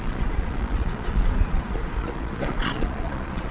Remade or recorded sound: remade